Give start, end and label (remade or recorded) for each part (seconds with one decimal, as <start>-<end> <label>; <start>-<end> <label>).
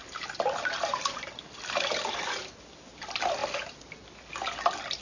0.0-2.8 remade; 2.8-5.0 recorded